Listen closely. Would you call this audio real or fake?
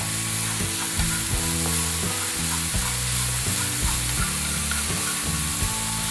real